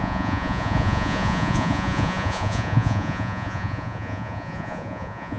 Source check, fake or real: fake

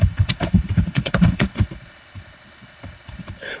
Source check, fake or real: fake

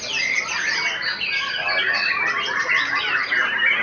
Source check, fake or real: real